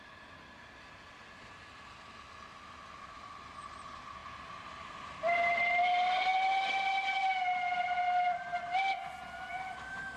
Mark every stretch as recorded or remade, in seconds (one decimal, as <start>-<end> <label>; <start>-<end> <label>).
0.0-10.2 recorded

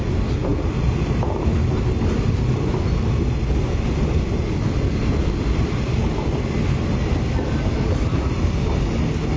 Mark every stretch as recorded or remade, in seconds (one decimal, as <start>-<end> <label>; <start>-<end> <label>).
0.0-9.4 recorded

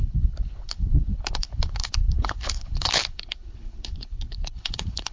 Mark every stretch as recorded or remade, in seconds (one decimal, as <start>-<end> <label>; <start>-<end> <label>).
0.0-5.1 remade

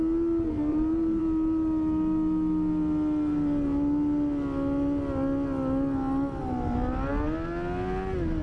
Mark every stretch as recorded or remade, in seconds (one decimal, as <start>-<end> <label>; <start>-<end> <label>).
0.0-0.7 recorded; 0.7-1.2 remade; 1.2-8.4 recorded